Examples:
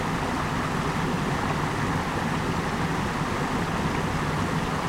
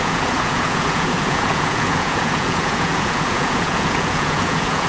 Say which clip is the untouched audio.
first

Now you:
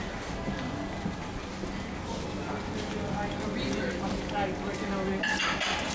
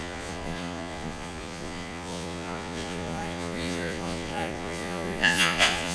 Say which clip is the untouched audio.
first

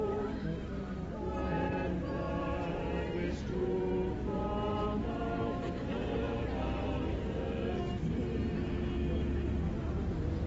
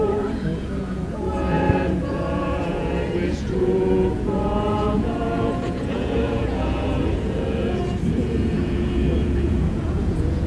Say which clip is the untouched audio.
first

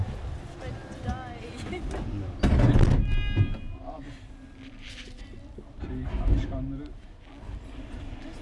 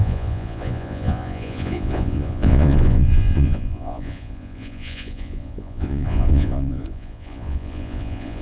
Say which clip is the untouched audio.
first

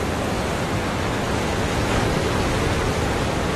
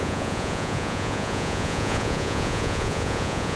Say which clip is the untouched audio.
first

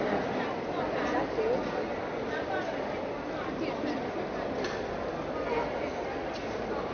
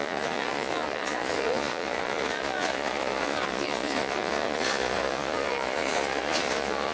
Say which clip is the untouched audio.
first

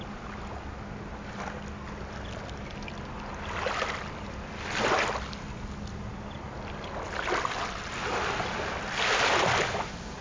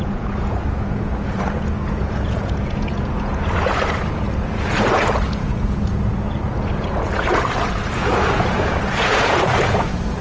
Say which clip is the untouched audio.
first